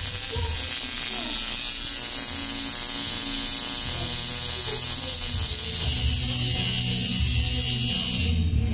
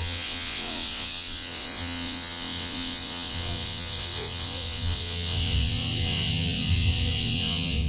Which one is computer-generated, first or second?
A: second